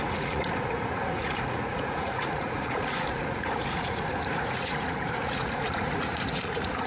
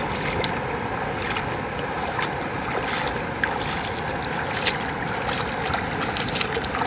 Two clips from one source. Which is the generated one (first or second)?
first